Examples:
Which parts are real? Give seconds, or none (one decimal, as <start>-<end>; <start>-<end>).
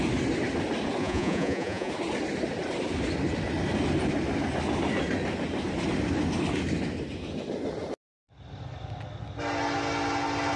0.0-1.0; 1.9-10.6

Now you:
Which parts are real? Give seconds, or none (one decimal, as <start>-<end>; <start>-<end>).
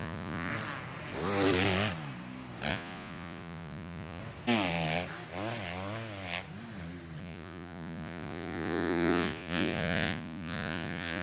0.5-2.7; 4.2-7.2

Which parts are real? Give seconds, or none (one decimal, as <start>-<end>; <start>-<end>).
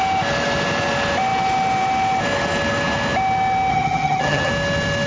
0.0-3.7; 4.5-5.1